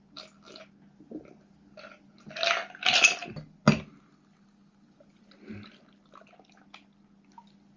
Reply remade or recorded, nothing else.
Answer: recorded